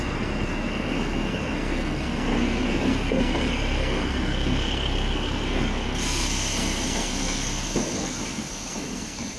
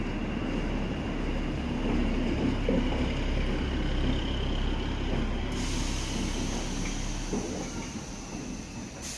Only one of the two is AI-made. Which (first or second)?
first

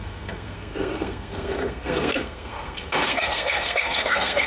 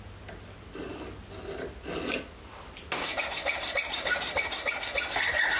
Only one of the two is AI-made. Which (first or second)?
first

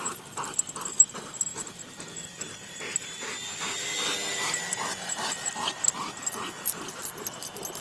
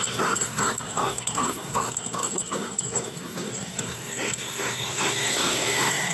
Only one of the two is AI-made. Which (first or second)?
second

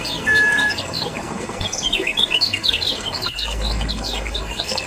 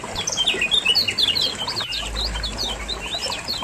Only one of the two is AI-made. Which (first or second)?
first